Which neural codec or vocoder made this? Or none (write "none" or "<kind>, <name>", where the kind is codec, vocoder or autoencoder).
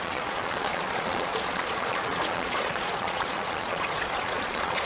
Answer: vocoder, Vocos